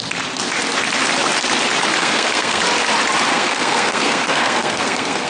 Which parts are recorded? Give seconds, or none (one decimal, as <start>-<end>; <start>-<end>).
0.0-2.0; 2.6-3.3